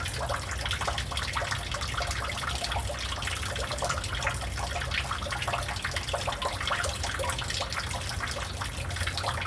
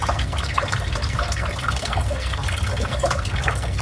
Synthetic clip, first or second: second